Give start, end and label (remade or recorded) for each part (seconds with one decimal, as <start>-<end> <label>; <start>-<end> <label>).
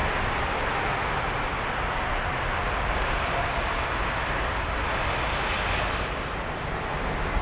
0.0-7.4 recorded